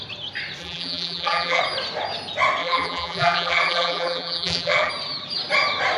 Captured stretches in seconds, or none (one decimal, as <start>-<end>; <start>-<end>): 0.0-0.6; 1.6-2.6; 4.9-6.0